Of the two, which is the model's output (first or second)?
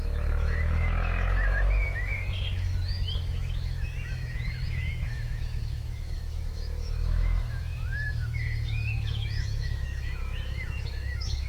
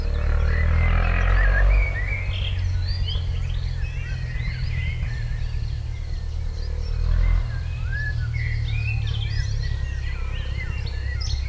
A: first